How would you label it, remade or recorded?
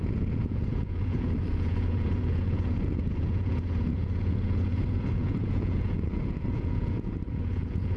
remade